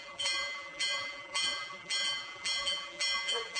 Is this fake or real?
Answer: fake